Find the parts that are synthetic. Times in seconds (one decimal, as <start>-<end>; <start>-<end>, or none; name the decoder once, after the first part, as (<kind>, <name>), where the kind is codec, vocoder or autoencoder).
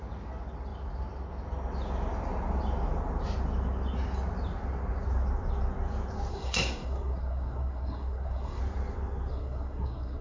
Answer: 6.3-8.6 (codec, SNAC); 9.3-10.2